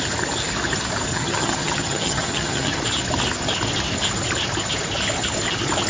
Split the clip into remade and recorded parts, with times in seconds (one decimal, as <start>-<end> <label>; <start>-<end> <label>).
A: 0.0-1.1 recorded; 1.1-2.8 remade; 2.8-5.9 recorded